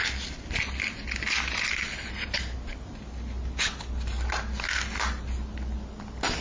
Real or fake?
real